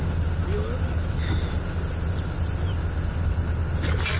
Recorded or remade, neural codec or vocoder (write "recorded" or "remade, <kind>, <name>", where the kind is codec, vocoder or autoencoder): recorded